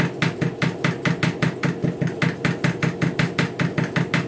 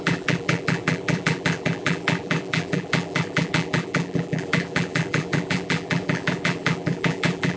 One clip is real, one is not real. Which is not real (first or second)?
second